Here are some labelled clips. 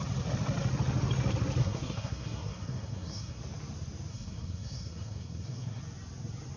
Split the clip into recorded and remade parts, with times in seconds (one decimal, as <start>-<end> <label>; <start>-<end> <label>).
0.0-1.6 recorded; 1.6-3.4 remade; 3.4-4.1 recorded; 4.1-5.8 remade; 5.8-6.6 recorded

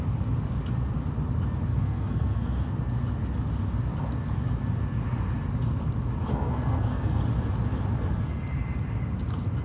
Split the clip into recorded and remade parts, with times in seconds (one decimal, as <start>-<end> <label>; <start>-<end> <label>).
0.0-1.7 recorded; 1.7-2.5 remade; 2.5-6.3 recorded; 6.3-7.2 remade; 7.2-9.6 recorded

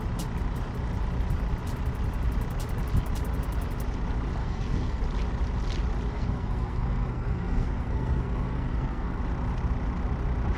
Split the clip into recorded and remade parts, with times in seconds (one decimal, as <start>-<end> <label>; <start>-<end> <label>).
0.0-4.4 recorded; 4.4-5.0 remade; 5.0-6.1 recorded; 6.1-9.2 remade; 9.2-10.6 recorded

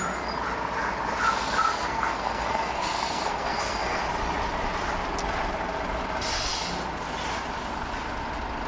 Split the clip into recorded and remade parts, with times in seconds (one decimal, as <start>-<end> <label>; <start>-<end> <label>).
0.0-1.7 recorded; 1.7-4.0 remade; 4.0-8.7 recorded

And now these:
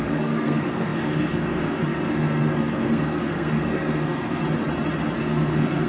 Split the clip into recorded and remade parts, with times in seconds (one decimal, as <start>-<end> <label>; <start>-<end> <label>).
0.0-4.4 remade; 4.4-5.2 recorded; 5.2-5.9 remade